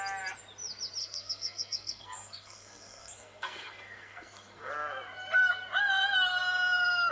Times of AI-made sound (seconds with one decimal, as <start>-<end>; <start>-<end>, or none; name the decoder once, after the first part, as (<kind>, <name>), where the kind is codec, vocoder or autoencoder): 1.0-4.7 (codec, SNAC)